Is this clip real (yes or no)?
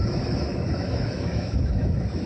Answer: no